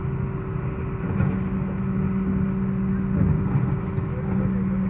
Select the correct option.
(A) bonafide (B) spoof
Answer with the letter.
A